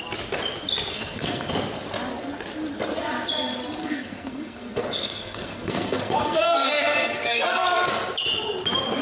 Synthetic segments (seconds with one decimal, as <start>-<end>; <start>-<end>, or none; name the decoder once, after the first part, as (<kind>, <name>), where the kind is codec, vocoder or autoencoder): 0.9-1.5 (codec, SNAC); 3.8-7.9